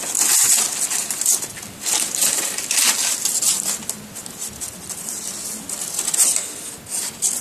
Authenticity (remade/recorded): recorded